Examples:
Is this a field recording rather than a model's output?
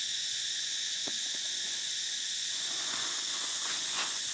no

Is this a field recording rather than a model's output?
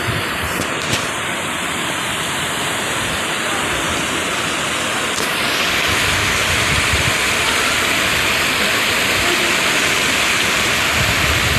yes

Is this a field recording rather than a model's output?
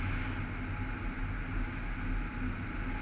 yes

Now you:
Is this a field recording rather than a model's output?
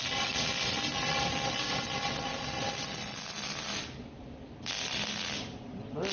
yes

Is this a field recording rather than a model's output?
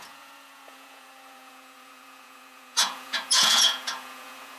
no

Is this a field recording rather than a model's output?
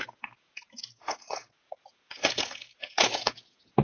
no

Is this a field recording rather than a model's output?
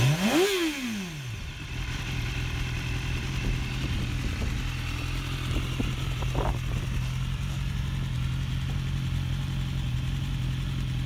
yes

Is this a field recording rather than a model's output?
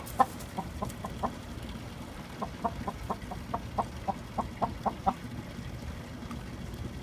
yes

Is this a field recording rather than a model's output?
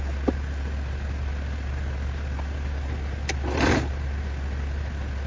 yes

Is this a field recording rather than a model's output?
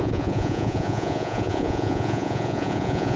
no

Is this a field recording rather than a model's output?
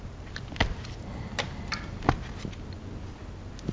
yes